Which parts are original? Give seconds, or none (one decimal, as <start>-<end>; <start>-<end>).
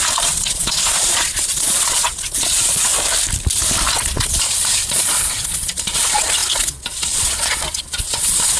2.9-4.0